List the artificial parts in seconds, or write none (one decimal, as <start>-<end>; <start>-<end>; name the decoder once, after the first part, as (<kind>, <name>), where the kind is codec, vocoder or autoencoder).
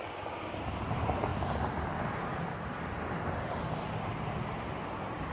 none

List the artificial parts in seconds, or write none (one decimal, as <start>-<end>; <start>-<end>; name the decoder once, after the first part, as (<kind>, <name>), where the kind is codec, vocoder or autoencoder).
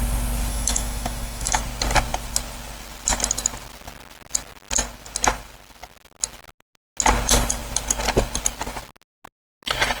0.5-1.6 (autoencoder, DAC-VAE)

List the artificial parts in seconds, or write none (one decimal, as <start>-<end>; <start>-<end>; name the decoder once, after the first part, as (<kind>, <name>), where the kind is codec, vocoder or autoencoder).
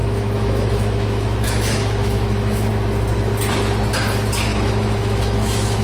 0.0-2.7 (autoencoder, DAC-VAE); 4.5-5.8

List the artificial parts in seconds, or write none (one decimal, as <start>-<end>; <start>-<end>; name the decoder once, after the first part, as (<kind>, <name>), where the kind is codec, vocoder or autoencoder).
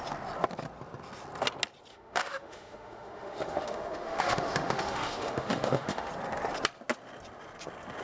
1.9-6.1 (autoencoder, DAC-VAE)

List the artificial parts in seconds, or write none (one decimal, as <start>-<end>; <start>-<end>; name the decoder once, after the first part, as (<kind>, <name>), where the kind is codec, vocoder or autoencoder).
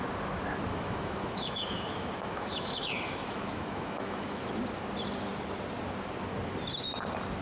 0.7-4.4 (autoencoder, DAC-VAE)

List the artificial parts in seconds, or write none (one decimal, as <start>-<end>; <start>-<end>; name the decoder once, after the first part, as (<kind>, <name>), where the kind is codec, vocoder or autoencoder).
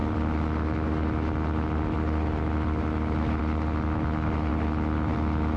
none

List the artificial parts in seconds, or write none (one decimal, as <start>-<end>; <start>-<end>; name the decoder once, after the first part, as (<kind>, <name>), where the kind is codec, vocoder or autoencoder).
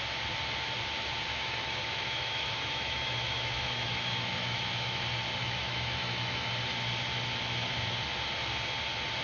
1.3-5.0 (autoencoder, DAC-VAE); 5.4-6.5